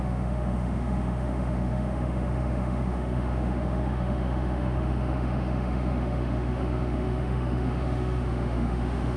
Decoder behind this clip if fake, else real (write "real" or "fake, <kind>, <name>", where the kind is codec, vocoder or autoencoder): fake, autoencoder, DAC-VAE